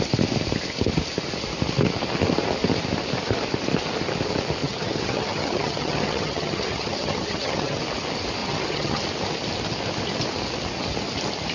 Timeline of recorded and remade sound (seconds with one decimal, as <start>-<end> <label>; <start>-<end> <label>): 0.0-4.6 recorded; 4.6-7.8 remade; 7.8-8.4 recorded; 8.4-9.0 remade; 9.0-11.5 recorded